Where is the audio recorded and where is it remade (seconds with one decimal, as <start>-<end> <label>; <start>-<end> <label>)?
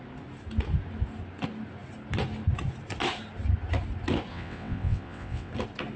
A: 0.0-4.3 recorded; 4.3-5.5 remade; 5.5-6.0 recorded